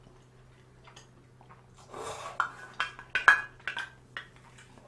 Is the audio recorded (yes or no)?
yes